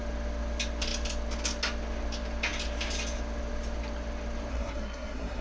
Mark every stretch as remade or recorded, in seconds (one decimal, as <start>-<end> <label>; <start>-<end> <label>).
0.0-4.5 recorded; 4.5-5.4 remade